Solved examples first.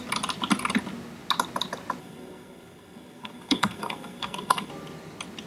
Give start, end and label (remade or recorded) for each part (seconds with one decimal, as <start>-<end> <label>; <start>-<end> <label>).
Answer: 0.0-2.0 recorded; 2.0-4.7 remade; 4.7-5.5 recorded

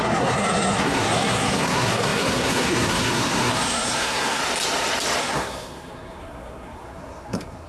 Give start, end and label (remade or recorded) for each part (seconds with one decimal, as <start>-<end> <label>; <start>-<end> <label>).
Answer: 0.0-4.4 remade; 4.4-5.2 recorded; 5.2-7.7 remade

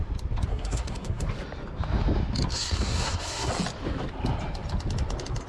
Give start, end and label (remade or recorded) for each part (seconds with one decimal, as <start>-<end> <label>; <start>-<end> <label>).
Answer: 0.0-0.5 recorded; 0.5-1.3 remade; 1.3-2.5 recorded; 2.5-3.5 remade; 3.5-5.5 recorded